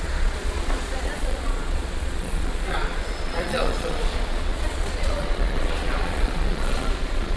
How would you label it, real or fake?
fake